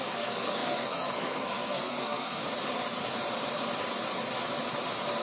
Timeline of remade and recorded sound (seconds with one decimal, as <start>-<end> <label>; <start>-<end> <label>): 0.0-2.4 remade; 2.4-5.2 recorded